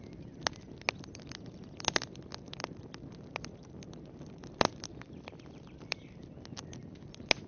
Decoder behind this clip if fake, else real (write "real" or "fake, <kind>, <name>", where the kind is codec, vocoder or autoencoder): real